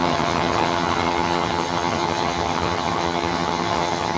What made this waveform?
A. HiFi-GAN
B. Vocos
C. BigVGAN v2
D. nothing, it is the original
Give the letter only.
A